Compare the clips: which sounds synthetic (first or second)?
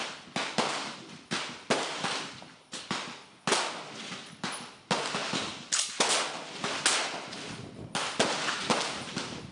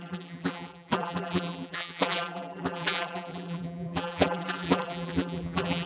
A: second